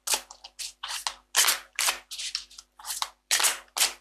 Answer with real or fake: real